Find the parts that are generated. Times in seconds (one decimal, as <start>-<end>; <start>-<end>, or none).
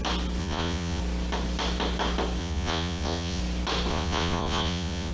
0.4-1.0; 2.4-3.4; 3.9-5.1